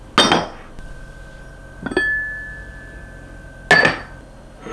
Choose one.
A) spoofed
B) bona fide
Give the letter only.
B